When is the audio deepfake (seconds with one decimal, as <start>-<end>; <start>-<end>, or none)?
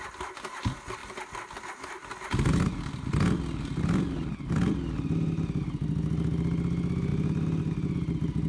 none